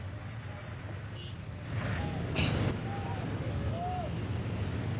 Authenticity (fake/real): real